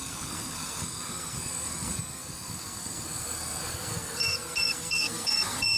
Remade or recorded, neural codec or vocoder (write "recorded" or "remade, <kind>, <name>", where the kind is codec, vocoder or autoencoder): remade, codec, SNAC